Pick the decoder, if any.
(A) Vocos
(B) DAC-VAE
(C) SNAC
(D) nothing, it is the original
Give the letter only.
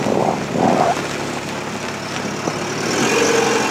D